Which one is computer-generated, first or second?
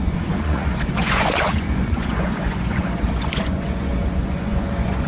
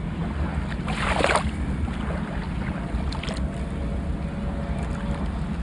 first